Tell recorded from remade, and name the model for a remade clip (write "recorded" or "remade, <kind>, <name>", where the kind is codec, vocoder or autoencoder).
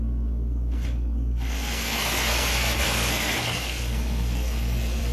remade, codec, SNAC